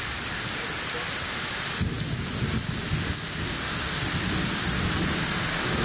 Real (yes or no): yes